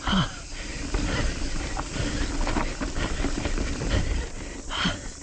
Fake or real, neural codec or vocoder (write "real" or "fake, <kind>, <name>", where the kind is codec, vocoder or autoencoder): fake, vocoder, BigVGAN v2